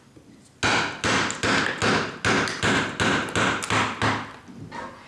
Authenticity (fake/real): real